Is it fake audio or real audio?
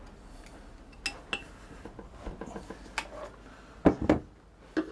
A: real